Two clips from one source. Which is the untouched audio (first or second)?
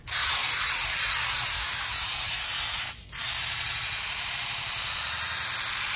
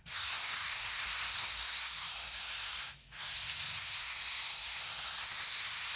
first